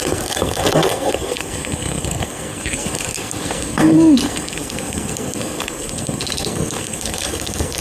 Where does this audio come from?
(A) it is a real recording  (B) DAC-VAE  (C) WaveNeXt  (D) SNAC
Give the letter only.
D